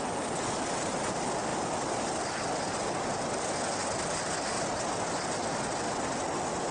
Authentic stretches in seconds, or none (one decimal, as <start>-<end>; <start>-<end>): 0.0-6.7